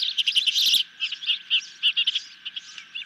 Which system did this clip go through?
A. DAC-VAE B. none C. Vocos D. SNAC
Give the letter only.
B